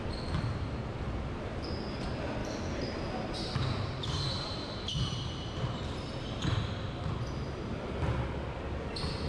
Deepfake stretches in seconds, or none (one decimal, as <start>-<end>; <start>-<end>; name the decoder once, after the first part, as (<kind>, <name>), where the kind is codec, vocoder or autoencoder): 2.4-5.8 (vocoder, BigVGAN v2)